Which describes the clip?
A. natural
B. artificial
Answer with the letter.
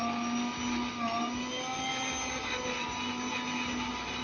A